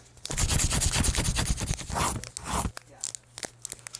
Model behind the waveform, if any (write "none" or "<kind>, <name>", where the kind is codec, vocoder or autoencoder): none